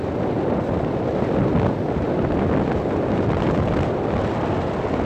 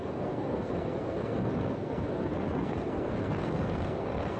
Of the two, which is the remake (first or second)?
second